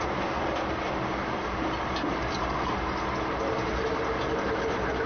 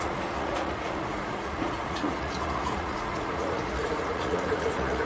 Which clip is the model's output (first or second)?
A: second